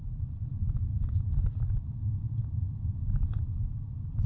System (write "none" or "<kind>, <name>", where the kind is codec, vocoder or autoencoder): none